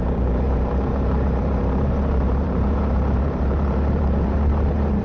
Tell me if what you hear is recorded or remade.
remade